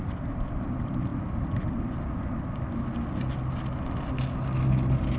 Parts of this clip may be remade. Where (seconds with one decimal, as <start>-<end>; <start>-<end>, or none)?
none